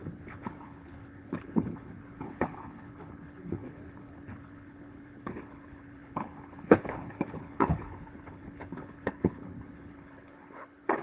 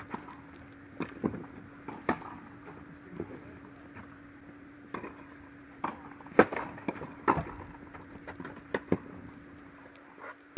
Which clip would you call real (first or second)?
second